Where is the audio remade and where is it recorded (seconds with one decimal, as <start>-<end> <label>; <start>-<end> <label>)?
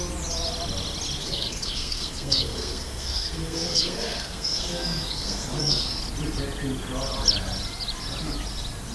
0.0-1.2 recorded; 1.2-6.0 remade; 6.0-8.9 recorded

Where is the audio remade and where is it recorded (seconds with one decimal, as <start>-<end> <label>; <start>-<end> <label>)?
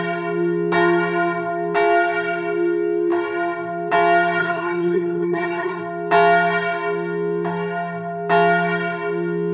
0.0-4.4 recorded; 4.4-5.8 remade; 5.8-9.5 recorded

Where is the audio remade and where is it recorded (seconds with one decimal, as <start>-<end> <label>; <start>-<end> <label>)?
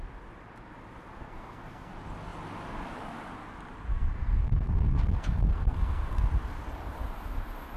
0.0-1.2 recorded; 1.2-1.9 remade; 1.9-3.9 recorded; 3.9-6.3 remade; 6.3-7.8 recorded